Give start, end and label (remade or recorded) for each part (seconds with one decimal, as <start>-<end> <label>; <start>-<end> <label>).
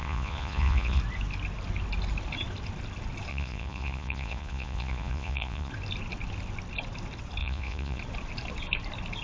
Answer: 0.0-1.0 remade; 1.0-3.3 recorded; 3.3-5.7 remade; 5.7-7.4 recorded; 7.4-8.0 remade; 8.0-9.2 recorded